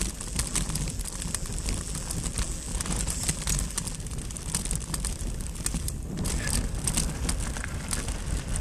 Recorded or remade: recorded